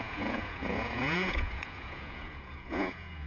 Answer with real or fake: fake